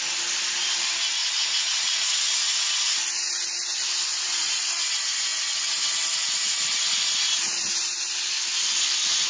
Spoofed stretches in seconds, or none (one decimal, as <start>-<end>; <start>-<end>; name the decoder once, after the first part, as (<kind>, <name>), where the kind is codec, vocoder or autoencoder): 1.2-2.2 (vocoder, Vocos); 4.1-4.7